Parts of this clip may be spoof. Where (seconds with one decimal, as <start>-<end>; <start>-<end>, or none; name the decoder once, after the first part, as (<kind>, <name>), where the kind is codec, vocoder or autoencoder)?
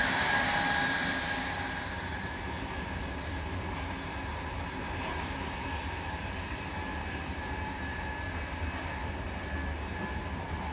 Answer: 2.1-3.0 (vocoder, BigVGAN v2); 4.8-9.1